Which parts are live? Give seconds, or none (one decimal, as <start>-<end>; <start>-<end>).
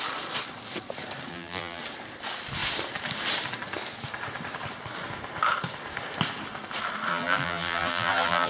0.0-1.3; 1.8-7.1